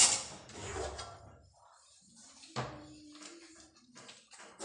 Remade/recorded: recorded